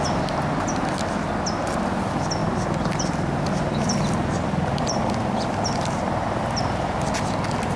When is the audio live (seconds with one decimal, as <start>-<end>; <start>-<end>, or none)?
0.0-2.4; 7.1-7.8